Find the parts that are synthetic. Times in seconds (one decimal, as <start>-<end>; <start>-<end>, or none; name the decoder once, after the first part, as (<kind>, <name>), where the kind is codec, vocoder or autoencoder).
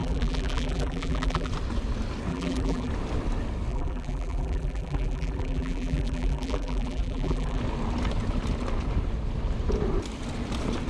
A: 0.0-1.5 (vocoder, BigVGAN v2); 2.3-2.9; 3.7-7.6